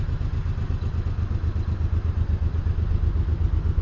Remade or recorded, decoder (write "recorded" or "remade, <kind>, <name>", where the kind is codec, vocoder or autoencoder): recorded